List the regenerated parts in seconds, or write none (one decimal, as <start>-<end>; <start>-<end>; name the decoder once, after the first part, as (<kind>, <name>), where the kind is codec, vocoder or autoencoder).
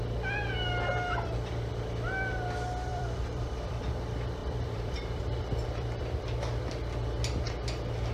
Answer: 2.9-3.8 (vocoder, BigVGAN v2); 4.4-6.4